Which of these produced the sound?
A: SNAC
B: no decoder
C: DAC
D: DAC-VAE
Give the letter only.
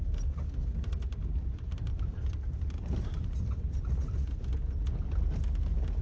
B